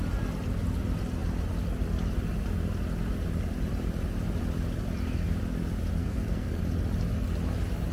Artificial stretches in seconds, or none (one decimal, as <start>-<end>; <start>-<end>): 6.0-6.6